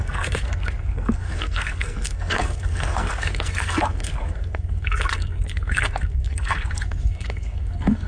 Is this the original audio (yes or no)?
no